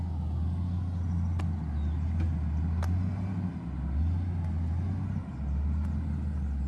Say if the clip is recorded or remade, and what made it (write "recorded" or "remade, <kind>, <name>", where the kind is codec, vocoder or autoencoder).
recorded